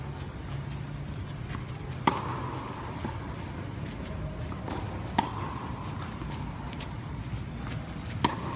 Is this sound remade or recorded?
recorded